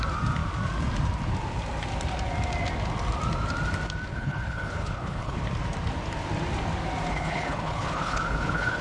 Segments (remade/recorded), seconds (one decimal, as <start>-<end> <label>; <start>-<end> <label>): 0.0-4.1 recorded; 4.1-5.4 remade; 5.4-7.1 recorded; 7.1-8.8 remade